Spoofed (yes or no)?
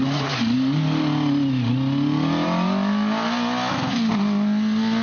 no